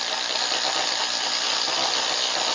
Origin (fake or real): real